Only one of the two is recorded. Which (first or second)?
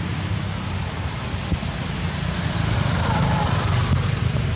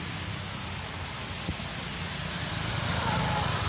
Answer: second